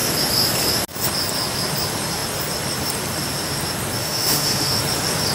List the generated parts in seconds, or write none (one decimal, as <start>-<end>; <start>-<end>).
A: 4.0-4.8